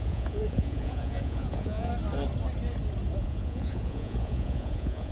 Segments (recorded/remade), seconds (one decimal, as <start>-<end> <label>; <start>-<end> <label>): 0.0-1.9 remade; 1.9-3.2 recorded; 3.2-5.1 remade

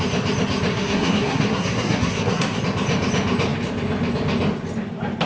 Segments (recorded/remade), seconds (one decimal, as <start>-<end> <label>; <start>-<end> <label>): 0.0-0.7 recorded; 0.7-2.6 remade; 2.6-5.3 recorded

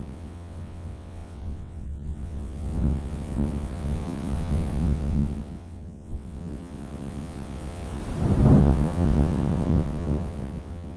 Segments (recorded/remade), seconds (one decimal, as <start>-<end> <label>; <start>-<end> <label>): 0.0-8.0 remade; 8.0-8.6 recorded; 8.6-11.0 remade

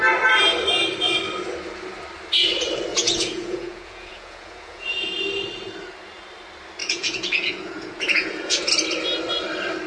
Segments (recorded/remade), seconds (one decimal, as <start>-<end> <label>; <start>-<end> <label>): 0.0-2.9 recorded; 2.9-5.1 remade; 5.1-6.8 recorded; 6.8-8.7 remade; 8.7-9.9 recorded